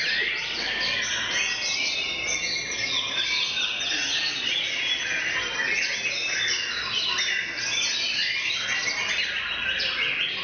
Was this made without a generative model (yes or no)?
yes